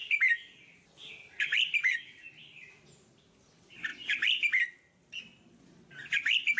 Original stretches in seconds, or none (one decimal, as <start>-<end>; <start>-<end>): 0.0-6.6